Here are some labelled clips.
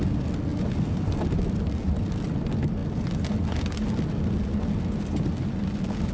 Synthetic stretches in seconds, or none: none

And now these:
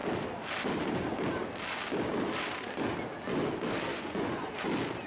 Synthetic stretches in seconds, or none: 3.9-4.5 (vocoder, Vocos)

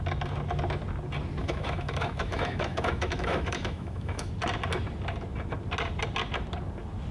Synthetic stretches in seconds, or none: 1.4-4.3 (autoencoder, DAC-VAE)

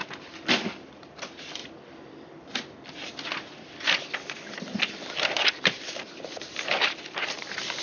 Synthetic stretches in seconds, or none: 0.7-1.6 (vocoder, BigVGAN v2); 5.5-7.8